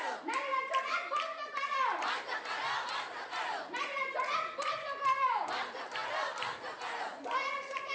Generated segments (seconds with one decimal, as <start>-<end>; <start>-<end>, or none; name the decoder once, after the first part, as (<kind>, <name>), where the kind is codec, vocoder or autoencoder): 0.0-7.9 (vocoder, BigVGAN v2)